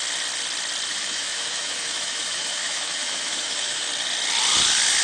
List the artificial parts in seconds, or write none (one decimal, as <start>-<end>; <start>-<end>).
0.9-3.9